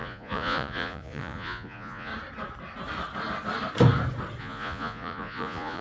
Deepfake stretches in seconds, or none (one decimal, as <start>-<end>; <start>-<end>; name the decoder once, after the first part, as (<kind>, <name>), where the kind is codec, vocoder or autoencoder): 0.0-2.1 (vocoder, Vocos); 4.4-5.8